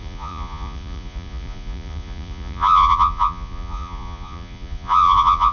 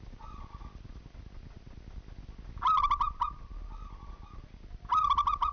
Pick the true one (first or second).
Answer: second